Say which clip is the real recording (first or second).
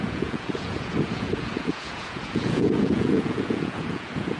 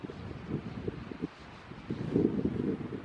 second